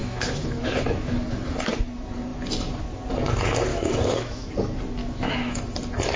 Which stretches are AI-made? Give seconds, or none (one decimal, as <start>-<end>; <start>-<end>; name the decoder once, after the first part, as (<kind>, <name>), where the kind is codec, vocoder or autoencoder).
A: 0.0-1.1 (autoencoder, DAC-VAE); 3.7-4.5; 5.0-5.6